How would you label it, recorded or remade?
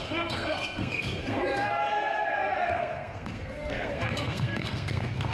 remade